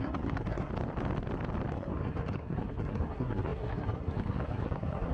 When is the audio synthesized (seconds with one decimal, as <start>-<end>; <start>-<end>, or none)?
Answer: 0.0-0.7; 1.7-5.1